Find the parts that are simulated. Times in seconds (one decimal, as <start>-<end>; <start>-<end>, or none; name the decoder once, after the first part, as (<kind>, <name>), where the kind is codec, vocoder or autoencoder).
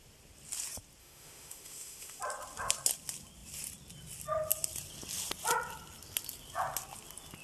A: 1.0-2.2 (autoencoder, DAC-VAE)